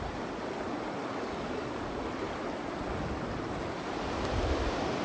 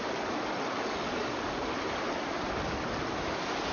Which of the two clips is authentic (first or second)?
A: second